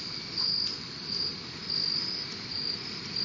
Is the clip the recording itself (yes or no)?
yes